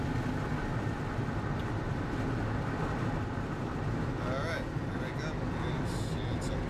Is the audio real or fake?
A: real